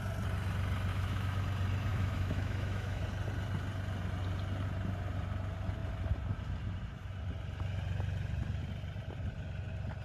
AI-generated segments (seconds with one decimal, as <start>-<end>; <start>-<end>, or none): 0.9-1.4; 1.9-3.0